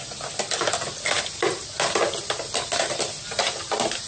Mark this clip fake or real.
real